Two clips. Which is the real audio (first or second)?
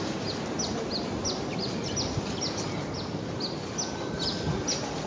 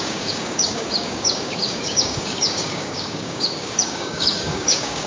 first